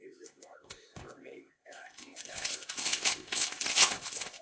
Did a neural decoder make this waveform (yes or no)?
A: yes